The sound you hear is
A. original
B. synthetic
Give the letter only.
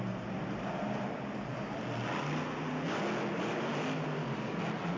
A